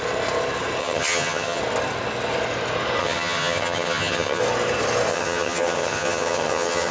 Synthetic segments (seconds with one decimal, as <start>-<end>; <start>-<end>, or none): 0.8-1.6; 3.0-4.4; 5.1-6.9